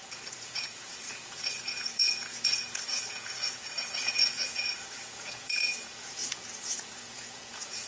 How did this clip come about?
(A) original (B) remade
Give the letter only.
B